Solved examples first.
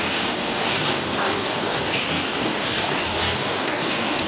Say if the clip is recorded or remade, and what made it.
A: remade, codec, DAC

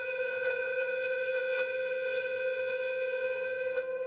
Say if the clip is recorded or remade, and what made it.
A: remade, vocoder, HiFi-GAN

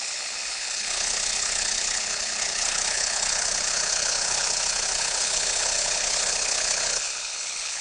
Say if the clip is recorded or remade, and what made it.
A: remade, codec, HILCodec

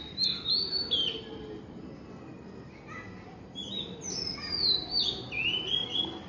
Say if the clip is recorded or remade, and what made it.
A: recorded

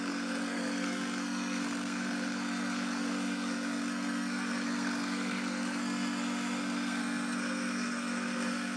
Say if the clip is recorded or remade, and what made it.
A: remade, codec, SNAC